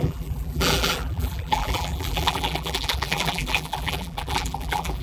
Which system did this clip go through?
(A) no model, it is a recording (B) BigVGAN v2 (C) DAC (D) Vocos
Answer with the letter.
B